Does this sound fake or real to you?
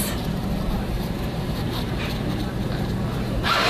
fake